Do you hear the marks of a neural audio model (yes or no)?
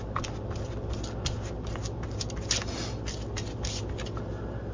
no